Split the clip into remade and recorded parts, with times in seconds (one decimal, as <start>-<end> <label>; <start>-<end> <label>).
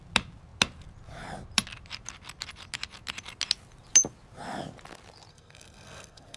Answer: 0.0-5.3 recorded; 5.3-6.4 remade